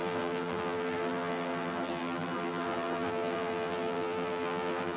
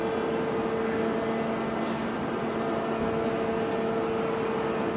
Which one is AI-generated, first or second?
first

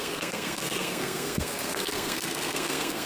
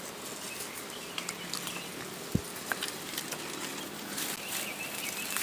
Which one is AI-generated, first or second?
first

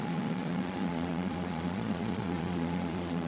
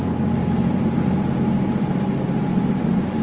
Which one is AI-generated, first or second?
first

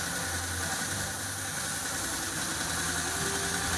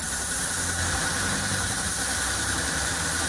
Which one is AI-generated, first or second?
second